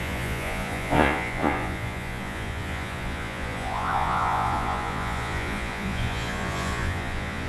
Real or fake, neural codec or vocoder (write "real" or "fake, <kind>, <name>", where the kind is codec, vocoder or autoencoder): fake, vocoder, Vocos